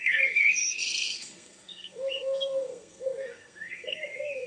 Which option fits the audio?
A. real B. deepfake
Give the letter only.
B